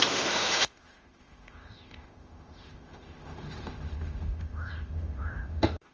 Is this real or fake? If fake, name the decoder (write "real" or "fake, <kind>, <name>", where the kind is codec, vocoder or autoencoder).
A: fake, autoencoder, DAC-VAE